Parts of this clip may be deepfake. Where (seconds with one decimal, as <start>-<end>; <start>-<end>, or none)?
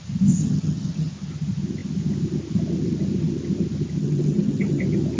0.4-1.1; 4.0-4.8